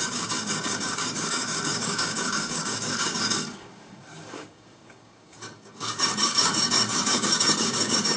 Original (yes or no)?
no